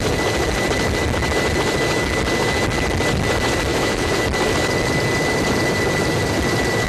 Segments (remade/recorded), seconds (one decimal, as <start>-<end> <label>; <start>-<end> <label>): 0.0-3.7 recorded; 3.7-4.2 remade; 4.2-6.9 recorded